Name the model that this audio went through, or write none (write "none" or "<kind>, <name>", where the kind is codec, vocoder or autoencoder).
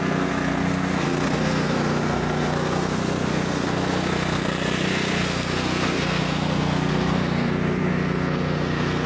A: codec, SNAC